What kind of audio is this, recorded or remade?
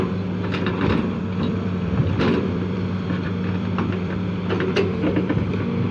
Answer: remade